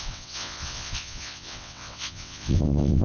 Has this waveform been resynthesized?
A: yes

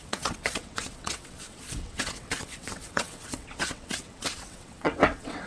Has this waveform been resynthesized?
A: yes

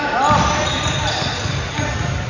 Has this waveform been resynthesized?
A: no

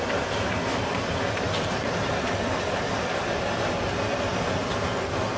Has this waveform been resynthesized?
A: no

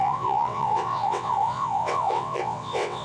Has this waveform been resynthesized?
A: yes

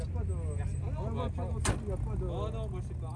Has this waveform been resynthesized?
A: no